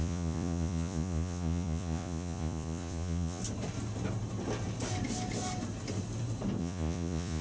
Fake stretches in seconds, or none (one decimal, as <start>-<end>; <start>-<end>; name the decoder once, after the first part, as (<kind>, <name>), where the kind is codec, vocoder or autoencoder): 0.0-3.4 (vocoder, Vocos); 6.6-7.4